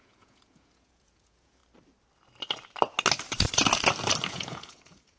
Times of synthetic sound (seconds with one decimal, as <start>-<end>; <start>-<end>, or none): 0.0-1.6; 4.3-5.2